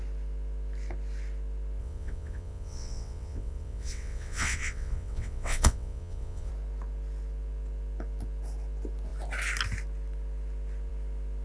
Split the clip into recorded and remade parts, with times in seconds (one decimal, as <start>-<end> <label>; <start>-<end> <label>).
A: 0.0-1.8 recorded; 1.8-6.5 remade; 6.5-11.4 recorded